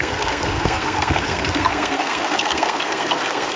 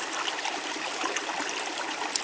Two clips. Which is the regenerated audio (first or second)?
first